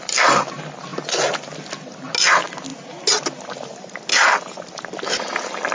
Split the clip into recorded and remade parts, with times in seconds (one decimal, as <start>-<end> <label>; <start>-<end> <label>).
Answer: 0.0-5.7 recorded